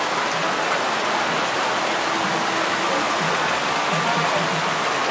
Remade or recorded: recorded